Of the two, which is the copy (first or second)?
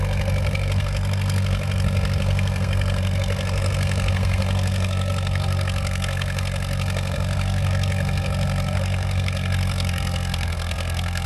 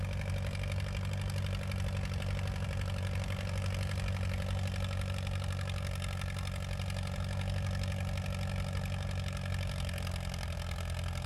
first